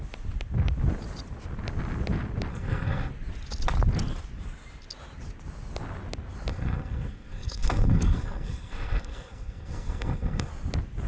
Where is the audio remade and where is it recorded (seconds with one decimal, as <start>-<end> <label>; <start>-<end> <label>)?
0.0-2.5 recorded; 2.5-3.1 remade; 3.1-6.5 recorded; 6.5-10.5 remade; 10.5-11.1 recorded

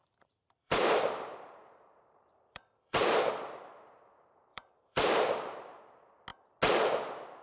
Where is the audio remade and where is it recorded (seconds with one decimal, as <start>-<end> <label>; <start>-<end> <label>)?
0.0-3.3 remade; 3.3-4.5 recorded; 4.5-5.8 remade; 5.8-7.4 recorded

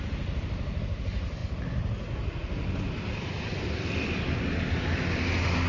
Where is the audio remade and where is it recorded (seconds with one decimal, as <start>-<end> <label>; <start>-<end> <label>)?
0.0-5.7 recorded

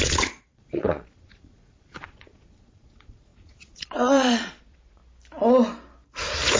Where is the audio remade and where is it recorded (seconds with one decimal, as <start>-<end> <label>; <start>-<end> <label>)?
0.0-5.0 remade; 5.0-6.6 recorded

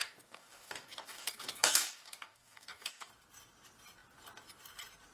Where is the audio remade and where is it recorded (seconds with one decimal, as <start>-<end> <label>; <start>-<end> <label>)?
0.0-3.1 remade; 3.1-5.1 recorded

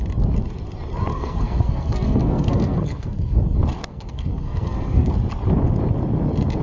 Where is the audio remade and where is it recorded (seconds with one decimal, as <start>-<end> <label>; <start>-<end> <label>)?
0.0-1.1 recorded; 1.1-3.4 remade; 3.4-3.8 recorded; 3.8-5.1 remade; 5.1-6.6 recorded

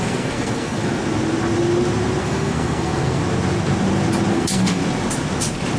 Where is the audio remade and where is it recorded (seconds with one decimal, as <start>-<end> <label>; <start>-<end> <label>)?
0.0-1.0 remade; 1.0-2.2 recorded; 2.2-3.2 remade; 3.2-4.3 recorded; 4.3-4.8 remade; 4.8-5.8 recorded

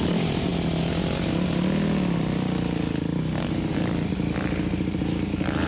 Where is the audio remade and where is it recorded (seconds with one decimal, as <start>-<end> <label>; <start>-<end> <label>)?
0.0-0.5 remade; 0.5-3.7 recorded; 3.7-5.7 remade